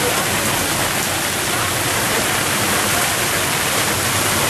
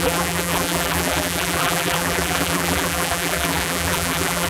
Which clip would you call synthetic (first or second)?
second